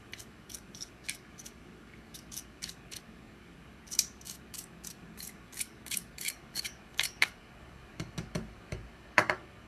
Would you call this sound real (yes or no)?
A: no